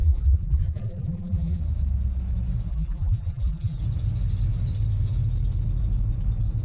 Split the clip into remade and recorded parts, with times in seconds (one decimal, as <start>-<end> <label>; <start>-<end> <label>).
0.0-1.6 remade; 1.6-2.7 recorded; 2.7-3.8 remade; 3.8-6.6 recorded